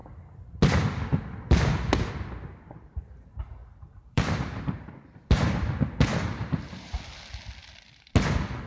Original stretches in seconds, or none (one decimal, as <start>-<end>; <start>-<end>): 0.0-3.6; 4.9-6.1; 7.0-8.7